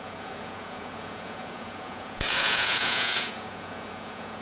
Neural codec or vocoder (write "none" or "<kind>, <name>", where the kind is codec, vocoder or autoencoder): vocoder, Vocos